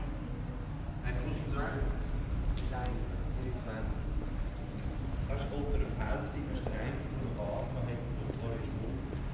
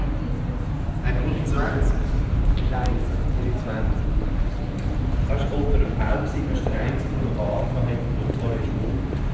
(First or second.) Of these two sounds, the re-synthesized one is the second